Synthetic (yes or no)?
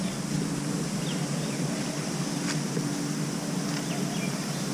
no